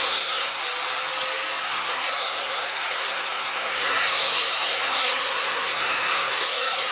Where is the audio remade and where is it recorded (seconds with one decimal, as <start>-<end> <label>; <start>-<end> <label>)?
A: 0.0-0.6 remade; 0.6-1.6 recorded; 1.6-6.9 remade